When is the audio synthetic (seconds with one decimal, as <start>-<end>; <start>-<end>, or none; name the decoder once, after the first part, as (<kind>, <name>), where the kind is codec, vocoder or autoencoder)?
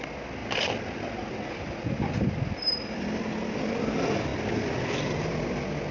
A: 0.4-1.3 (vocoder, BigVGAN v2)